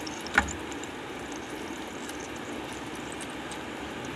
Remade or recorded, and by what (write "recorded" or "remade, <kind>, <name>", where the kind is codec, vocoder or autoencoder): recorded